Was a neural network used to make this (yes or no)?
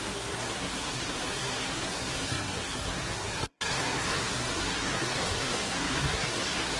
yes